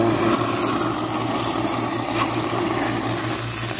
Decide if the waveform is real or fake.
real